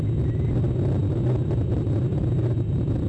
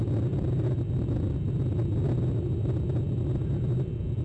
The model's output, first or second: first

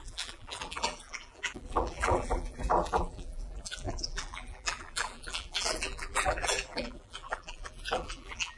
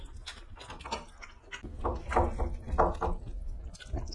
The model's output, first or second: first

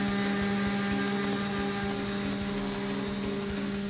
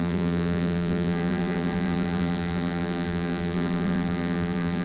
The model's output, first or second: second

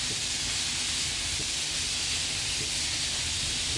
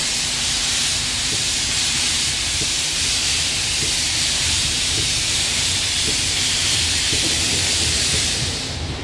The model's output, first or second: second